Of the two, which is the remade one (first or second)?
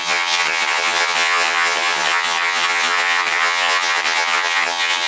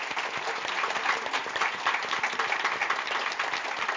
first